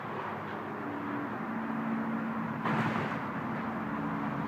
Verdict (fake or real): real